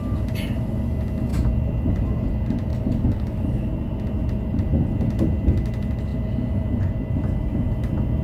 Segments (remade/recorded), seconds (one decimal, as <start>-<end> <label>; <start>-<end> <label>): 0.0-2.7 recorded; 2.7-3.7 remade; 3.7-8.2 recorded